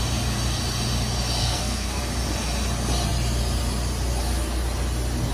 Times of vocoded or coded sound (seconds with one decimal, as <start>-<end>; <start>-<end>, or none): 1.4-2.0

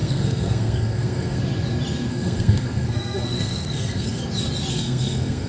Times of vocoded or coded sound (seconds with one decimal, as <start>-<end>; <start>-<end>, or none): 0.0-1.4; 2.1-4.2; 4.7-5.5